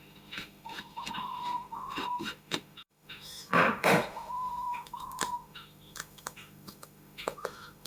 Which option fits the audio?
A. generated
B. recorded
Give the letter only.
A